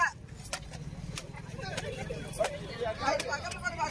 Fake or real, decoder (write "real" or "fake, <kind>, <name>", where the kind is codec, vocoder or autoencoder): real